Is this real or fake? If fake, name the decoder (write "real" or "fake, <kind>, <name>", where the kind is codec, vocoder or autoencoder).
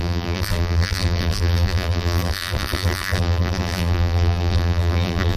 fake, vocoder, BigVGAN v2